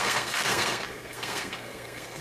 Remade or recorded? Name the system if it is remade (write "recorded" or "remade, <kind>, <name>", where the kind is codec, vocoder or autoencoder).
remade, codec, SNAC